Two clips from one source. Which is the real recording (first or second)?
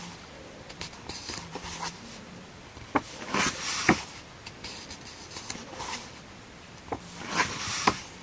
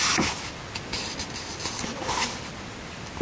second